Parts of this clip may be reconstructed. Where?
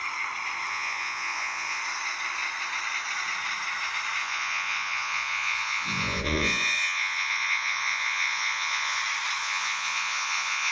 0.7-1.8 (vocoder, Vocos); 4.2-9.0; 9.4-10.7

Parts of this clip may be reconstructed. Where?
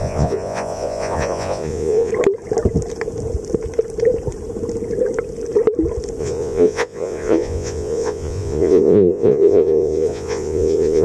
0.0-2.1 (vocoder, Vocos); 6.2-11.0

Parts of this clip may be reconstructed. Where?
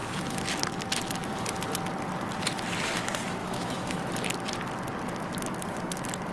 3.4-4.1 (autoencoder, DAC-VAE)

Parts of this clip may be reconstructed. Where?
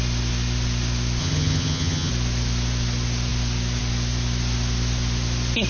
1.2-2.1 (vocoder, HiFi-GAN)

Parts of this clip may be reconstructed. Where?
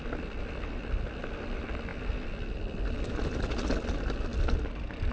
none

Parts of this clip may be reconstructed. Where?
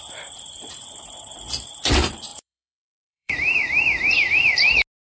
2.3-4.3 (vocoder, BigVGAN v2)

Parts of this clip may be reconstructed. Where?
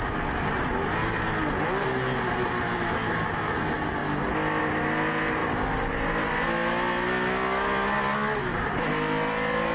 5.4-6.3 (vocoder, BigVGAN v2); 8.4-8.9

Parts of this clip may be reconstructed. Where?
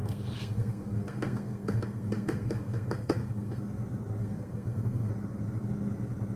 0.0-3.6 (codec, SNAC); 4.2-5.1